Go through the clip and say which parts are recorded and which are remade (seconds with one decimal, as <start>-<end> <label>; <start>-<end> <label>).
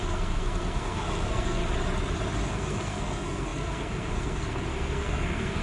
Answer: 0.0-1.6 remade; 1.6-2.5 recorded; 2.5-5.6 remade